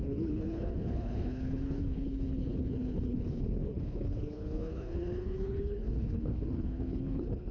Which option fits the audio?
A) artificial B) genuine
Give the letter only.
A